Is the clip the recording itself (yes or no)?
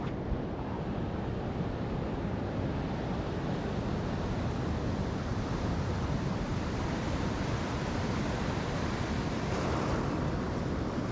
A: yes